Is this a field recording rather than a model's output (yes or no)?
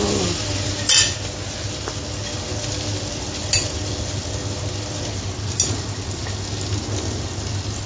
yes